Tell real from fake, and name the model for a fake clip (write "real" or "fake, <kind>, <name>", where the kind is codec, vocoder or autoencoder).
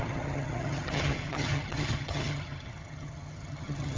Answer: fake, vocoder, HiFi-GAN